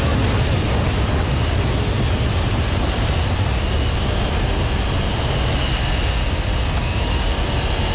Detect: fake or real real